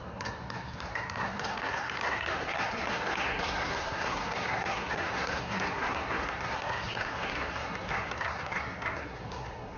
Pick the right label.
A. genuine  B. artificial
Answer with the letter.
B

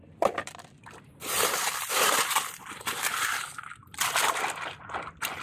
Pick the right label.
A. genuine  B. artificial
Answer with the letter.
B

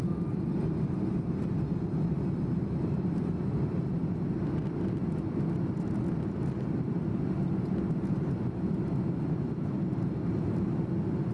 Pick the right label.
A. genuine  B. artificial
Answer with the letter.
A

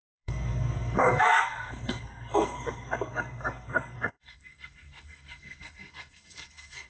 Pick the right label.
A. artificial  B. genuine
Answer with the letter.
A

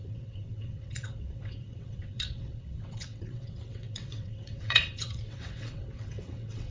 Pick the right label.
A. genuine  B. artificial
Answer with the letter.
B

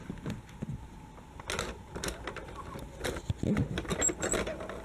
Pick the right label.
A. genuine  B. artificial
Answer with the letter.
A